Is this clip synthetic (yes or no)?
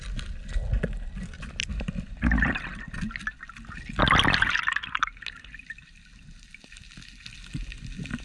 no